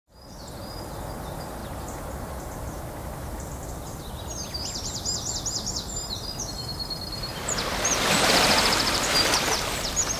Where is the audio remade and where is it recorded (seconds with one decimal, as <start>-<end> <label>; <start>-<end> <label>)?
0.0-10.2 recorded

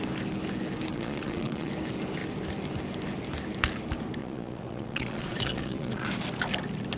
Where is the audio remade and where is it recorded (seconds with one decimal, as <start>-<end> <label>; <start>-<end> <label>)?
0.0-0.9 recorded; 0.9-1.7 remade; 1.7-4.2 recorded; 4.2-6.1 remade; 6.1-7.0 recorded